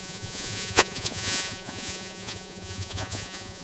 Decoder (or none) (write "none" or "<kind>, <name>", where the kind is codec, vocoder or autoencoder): vocoder, Vocos